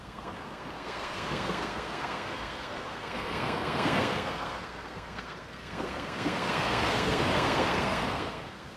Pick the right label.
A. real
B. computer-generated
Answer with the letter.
B